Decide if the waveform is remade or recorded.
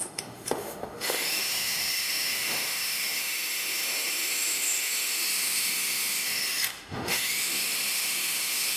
remade